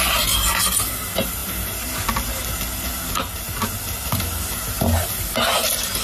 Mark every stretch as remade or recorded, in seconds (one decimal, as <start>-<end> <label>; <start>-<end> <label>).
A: 0.0-6.0 recorded